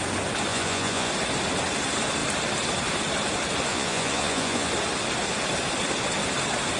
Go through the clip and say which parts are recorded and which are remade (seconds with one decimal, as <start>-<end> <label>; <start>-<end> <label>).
0.0-0.5 recorded; 0.5-1.1 remade; 1.1-3.7 recorded; 3.7-4.7 remade; 4.7-6.8 recorded